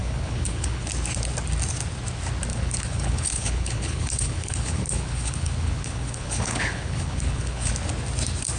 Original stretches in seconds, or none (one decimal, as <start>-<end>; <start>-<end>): 0.9-2.5; 7.7-8.6